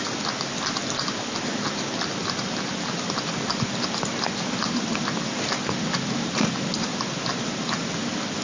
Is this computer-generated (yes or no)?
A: no